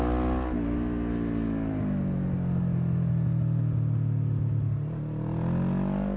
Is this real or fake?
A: real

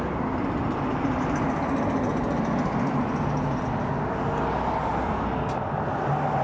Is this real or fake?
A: real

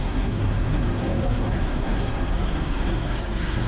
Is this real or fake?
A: fake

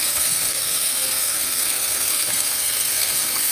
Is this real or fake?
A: fake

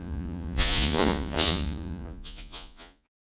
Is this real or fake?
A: fake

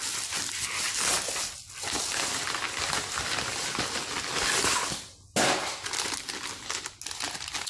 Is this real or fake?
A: real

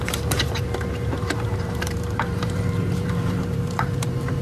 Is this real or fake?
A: fake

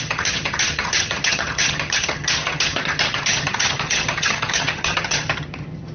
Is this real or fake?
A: fake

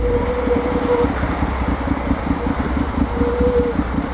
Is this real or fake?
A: real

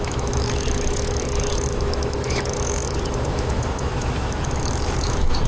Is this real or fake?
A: fake